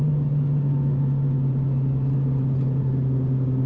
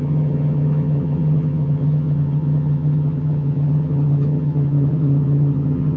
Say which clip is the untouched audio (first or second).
first